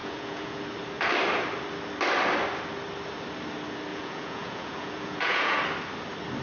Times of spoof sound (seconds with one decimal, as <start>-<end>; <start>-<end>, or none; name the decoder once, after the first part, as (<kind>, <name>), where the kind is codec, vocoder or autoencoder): 0.0-0.6 (vocoder, Vocos); 3.9-5.6